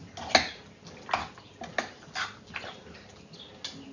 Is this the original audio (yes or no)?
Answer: yes